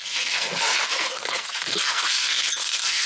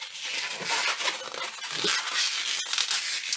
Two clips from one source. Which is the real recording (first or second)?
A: second